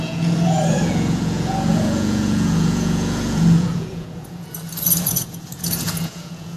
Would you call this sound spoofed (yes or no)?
yes